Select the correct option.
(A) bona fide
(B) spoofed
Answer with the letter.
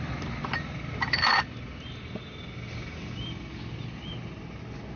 A